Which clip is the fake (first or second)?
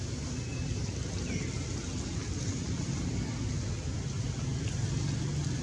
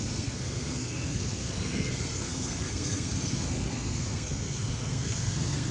second